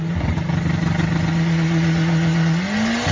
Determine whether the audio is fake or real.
real